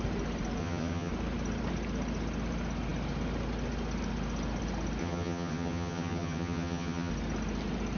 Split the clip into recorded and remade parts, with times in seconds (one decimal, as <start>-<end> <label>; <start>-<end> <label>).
0.0-0.6 recorded; 0.6-1.1 remade; 1.1-5.0 recorded; 5.0-7.1 remade; 7.1-8.0 recorded